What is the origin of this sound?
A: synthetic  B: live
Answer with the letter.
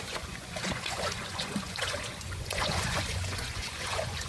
A